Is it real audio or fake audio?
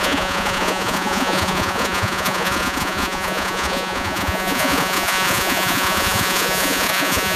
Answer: fake